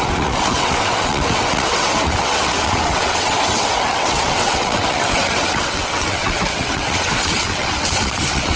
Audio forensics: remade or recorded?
remade